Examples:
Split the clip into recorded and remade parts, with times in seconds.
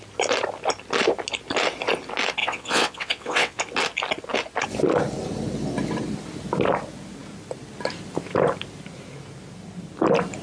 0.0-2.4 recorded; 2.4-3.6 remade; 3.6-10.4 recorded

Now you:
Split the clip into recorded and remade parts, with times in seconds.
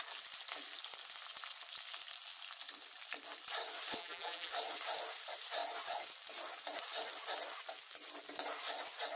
0.0-4.0 recorded; 4.0-4.5 remade; 4.5-9.2 recorded